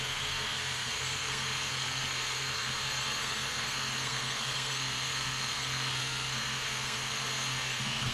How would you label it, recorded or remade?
remade